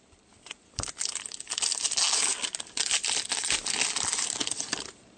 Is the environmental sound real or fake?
real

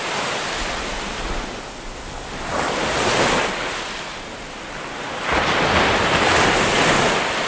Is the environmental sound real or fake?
real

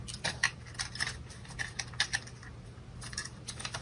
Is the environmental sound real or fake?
real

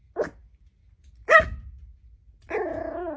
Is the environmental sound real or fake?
real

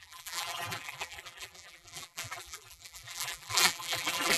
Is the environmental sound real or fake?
fake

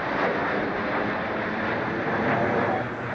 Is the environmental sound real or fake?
real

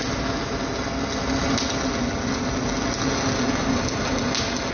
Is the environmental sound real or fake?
real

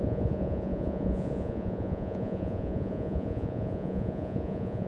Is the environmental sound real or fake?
fake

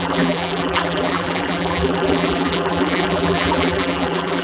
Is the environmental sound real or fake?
fake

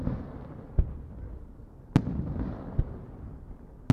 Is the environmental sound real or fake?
real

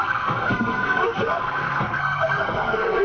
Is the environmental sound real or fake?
fake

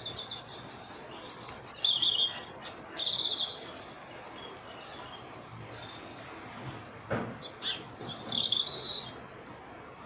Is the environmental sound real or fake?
real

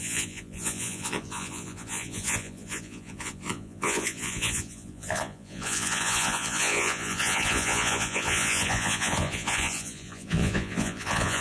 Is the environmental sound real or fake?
fake